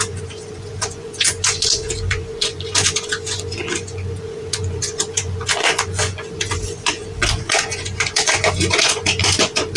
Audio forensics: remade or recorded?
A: remade